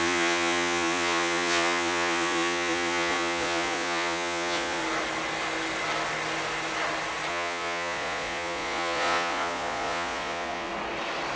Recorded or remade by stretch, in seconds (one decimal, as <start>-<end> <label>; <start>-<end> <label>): 0.0-4.8 remade; 4.8-7.3 recorded; 7.3-10.7 remade; 10.7-11.4 recorded